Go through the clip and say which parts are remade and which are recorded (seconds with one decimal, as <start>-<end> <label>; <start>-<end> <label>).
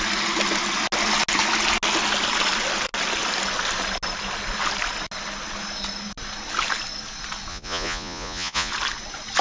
0.0-7.5 recorded; 7.5-8.7 remade; 8.7-9.4 recorded